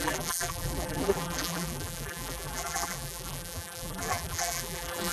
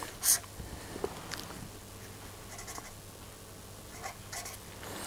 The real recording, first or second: second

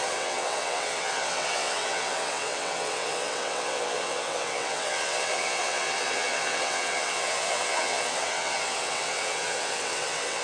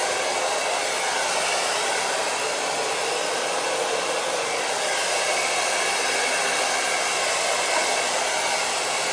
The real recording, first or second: second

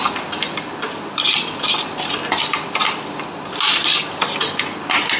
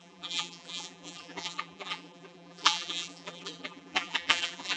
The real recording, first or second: first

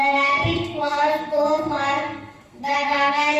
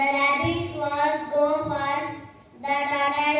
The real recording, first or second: second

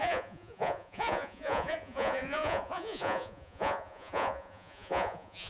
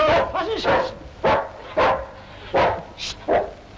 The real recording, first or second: second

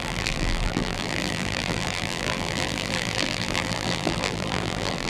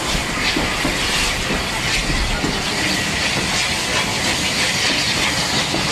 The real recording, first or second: second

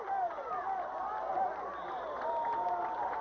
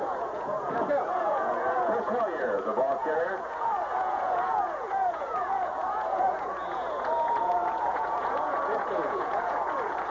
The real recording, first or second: first